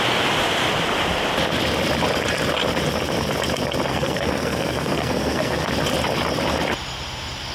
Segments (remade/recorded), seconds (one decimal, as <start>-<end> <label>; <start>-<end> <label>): 0.0-3.9 recorded; 3.9-5.7 remade; 5.7-7.5 recorded